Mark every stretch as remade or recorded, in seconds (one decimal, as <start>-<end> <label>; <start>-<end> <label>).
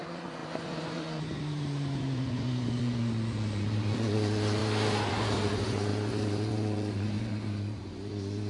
0.0-4.6 remade; 4.6-5.1 recorded; 5.1-8.5 remade